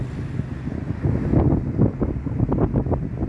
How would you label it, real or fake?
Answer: real